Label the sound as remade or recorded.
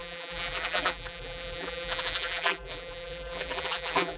remade